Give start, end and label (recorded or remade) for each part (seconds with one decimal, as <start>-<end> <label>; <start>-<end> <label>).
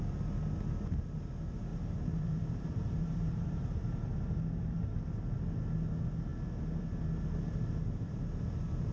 0.0-1.7 recorded; 1.7-5.0 remade; 5.0-8.9 recorded